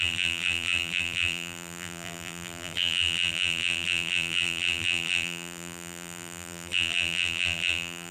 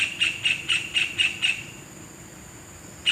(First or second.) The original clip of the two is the second